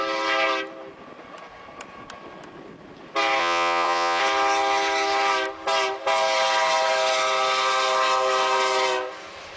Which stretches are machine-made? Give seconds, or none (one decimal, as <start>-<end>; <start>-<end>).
3.4-4.2